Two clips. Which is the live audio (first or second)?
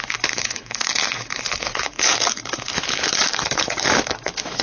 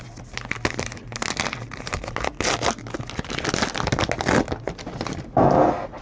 second